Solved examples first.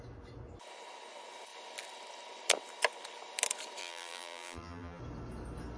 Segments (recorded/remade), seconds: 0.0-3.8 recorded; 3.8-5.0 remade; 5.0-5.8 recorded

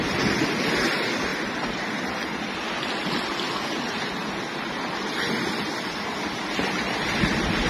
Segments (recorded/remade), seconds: 0.0-7.7 recorded

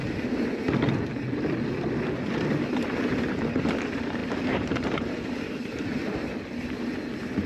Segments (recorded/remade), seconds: 0.0-4.2 recorded; 4.2-6.3 remade; 6.3-7.5 recorded

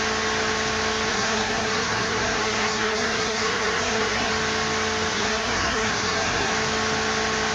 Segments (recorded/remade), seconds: 0.0-1.1 recorded; 1.1-4.3 remade; 4.3-5.1 recorded; 5.1-6.5 remade; 6.5-7.5 recorded